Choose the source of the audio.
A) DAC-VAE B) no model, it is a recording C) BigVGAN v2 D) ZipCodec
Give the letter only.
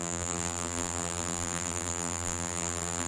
C